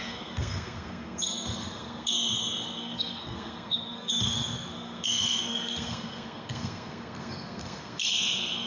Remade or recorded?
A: remade